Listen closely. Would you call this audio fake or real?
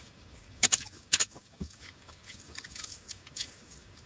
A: fake